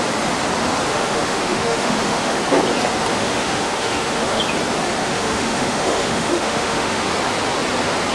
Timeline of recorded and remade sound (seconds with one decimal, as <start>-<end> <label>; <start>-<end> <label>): 0.0-0.9 recorded; 0.9-2.4 remade; 2.4-3.1 recorded; 3.1-4.4 remade; 4.4-5.0 recorded; 5.0-7.1 remade; 7.1-8.1 recorded